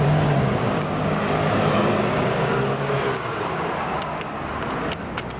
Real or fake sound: real